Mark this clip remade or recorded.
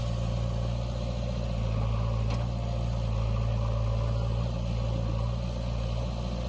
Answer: recorded